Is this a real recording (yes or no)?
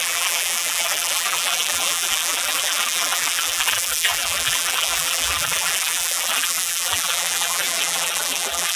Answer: no